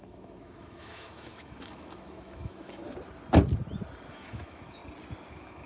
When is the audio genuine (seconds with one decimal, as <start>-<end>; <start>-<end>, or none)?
2.8-4.1; 4.8-5.3